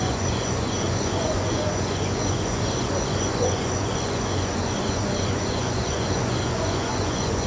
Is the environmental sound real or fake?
fake